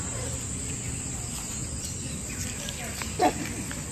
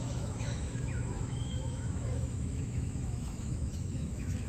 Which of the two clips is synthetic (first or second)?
second